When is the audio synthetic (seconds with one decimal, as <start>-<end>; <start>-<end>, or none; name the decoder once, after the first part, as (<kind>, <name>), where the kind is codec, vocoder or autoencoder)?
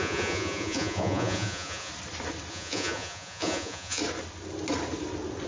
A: 0.0-1.9 (vocoder, Vocos); 2.5-4.0